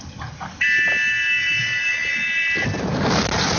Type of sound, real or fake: real